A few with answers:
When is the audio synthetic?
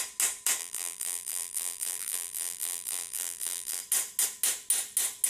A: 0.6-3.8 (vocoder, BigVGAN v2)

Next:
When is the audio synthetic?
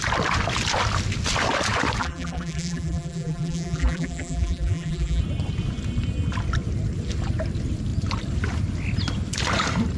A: 2.0-5.2 (vocoder, BigVGAN v2)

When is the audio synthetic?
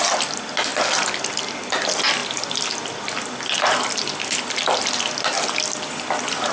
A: none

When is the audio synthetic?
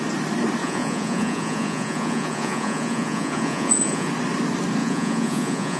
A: 0.6-4.1 (vocoder, Vocos); 4.8-5.8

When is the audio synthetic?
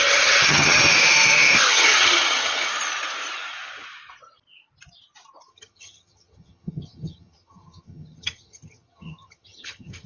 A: 0.0-0.8 (vocoder, HiFi-GAN); 1.7-2.7; 5.5-10.1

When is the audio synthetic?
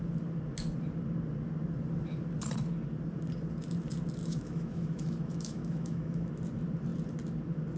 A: 4.2-6.3 (autoencoder, DAC-VAE)